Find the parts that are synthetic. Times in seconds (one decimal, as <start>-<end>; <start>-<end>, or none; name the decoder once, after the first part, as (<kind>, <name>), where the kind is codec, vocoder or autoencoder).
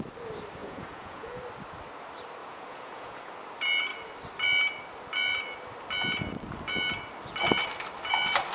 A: 0.6-1.4 (vocoder, Vocos); 2.4-3.3